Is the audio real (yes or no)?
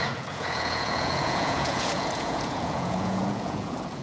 no